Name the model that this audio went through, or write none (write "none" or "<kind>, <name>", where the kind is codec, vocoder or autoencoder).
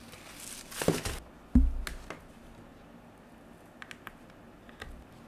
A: none